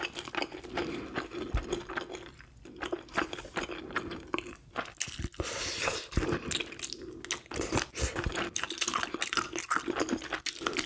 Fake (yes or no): no